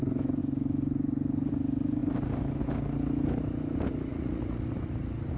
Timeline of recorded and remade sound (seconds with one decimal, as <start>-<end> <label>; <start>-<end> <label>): 0.0-4.1 recorded; 4.1-4.6 remade; 4.6-5.4 recorded